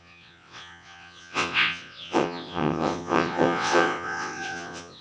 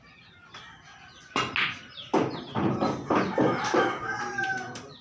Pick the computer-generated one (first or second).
first